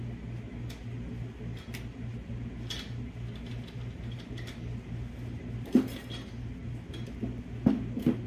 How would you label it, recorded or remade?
recorded